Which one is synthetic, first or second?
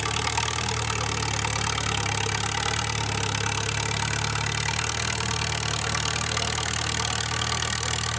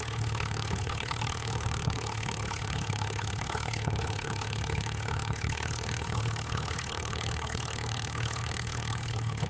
second